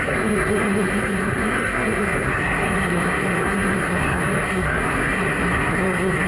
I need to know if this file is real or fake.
fake